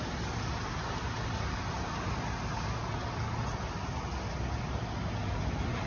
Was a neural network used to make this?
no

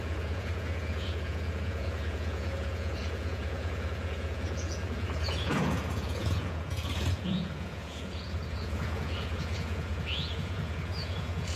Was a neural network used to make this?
yes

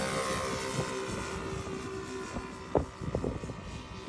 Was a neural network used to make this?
no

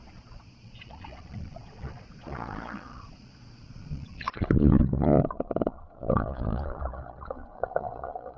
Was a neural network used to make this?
yes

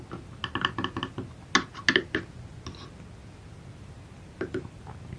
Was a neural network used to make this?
no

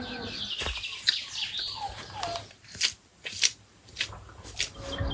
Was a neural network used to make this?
no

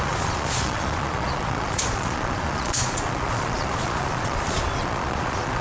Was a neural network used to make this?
yes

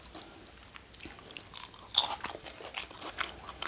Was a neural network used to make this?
no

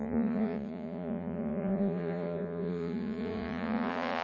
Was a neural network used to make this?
yes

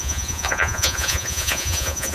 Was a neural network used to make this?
yes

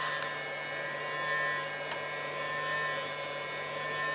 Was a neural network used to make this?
no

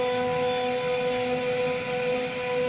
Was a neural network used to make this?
no